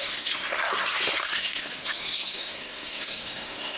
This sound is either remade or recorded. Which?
remade